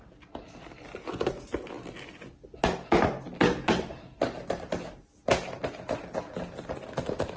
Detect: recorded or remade recorded